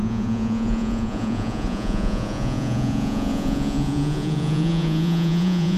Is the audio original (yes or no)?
no